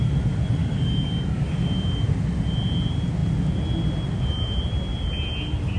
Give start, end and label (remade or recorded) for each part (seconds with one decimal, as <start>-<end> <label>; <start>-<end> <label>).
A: 0.0-0.6 recorded; 0.6-1.5 remade; 1.5-5.8 recorded